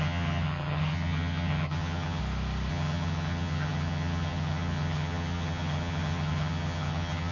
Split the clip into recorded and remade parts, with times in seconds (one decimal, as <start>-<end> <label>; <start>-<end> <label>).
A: 0.0-2.2 remade; 2.2-2.7 recorded; 2.7-7.3 remade